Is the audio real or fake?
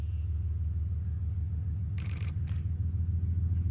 real